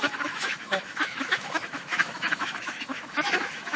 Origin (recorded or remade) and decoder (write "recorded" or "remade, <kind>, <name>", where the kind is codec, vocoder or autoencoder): remade, autoencoder, DAC-VAE